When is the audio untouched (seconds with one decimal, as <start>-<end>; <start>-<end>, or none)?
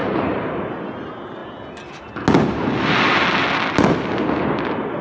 0.7-5.0